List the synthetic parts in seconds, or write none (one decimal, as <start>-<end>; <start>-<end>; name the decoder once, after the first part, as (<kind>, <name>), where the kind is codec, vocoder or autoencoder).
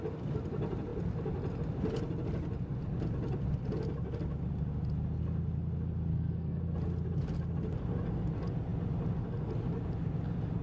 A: 6.1-6.6 (codec, SNAC)